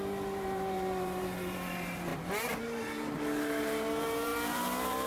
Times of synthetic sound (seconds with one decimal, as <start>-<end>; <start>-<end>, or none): 0.0-2.1; 2.6-5.1